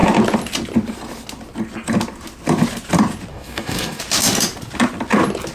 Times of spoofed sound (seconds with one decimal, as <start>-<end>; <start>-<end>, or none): 3.3-4.0